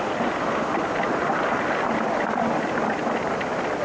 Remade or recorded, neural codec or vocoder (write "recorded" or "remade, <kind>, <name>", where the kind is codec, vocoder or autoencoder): recorded